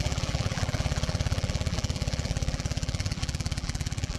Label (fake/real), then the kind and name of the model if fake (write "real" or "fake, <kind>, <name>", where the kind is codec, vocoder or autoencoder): fake, vocoder, BigVGAN v2